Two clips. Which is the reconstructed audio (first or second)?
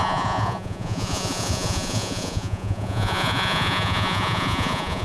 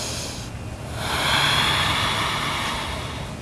first